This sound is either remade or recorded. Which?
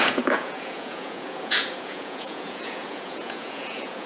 remade